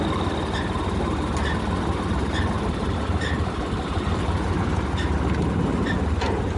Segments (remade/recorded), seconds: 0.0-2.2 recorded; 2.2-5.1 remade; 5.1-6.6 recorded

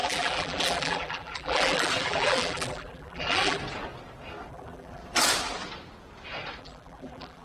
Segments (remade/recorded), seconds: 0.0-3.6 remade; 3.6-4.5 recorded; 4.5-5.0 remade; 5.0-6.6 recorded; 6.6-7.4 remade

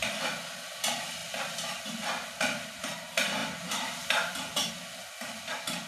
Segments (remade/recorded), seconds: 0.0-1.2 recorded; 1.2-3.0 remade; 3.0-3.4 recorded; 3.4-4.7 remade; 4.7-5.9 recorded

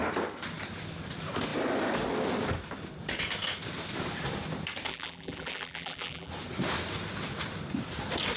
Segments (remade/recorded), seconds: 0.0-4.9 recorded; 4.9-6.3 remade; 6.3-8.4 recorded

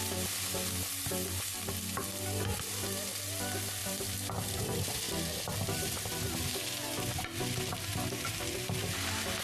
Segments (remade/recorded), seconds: 0.0-3.8 recorded; 3.8-4.6 remade; 4.6-9.4 recorded